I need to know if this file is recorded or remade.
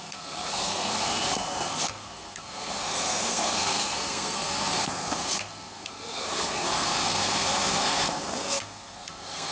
remade